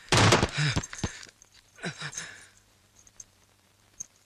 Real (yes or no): no